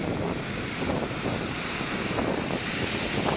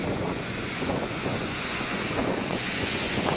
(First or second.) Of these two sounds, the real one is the first